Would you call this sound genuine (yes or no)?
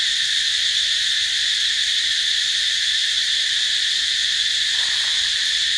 no